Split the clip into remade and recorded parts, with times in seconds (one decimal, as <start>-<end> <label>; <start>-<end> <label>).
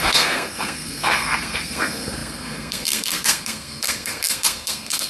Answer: 0.0-5.1 remade